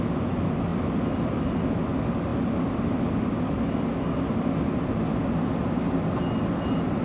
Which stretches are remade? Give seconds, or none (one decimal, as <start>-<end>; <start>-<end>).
none